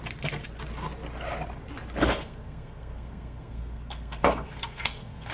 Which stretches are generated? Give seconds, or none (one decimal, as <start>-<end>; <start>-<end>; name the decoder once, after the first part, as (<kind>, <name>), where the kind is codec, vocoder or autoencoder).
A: 2.0-5.3 (codec, SNAC)